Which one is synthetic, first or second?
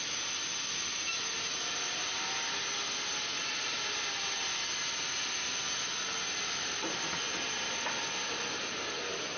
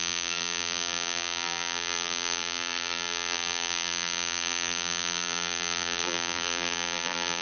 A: second